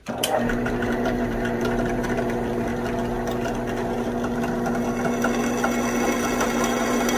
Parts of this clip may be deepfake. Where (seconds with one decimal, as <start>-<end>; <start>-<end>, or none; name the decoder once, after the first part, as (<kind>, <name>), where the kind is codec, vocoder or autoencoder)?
0.0-2.7 (vocoder, BigVGAN v2); 6.3-7.2